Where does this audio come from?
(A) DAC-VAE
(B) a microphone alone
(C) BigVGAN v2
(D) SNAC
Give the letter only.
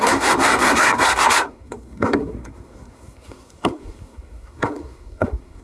D